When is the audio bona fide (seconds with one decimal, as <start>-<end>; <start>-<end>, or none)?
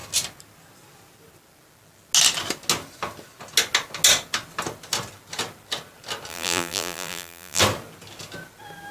0.0-6.3; 7.6-8.9